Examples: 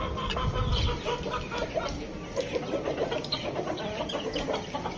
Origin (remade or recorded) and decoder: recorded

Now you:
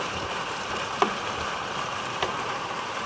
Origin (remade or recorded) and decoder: remade, vocoder, BigVGAN v2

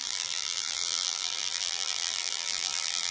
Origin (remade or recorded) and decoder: remade, vocoder, BigVGAN v2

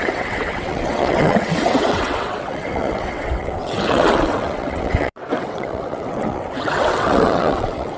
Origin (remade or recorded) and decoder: remade, vocoder, WaveNeXt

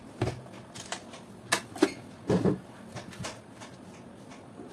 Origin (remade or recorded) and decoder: recorded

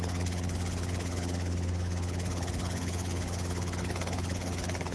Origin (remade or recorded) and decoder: remade, codec, HILCodec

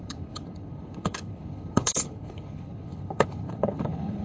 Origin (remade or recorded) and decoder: remade, codec, HILCodec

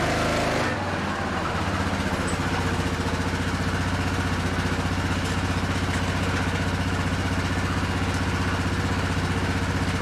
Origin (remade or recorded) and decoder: recorded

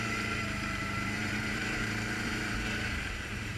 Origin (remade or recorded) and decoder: remade, vocoder, BigVGAN v2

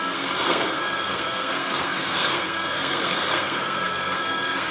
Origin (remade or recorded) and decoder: remade, codec, SNAC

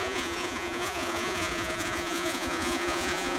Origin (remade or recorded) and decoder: remade, vocoder, Vocos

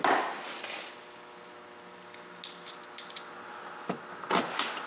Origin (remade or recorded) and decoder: recorded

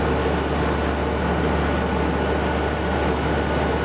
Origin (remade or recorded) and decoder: recorded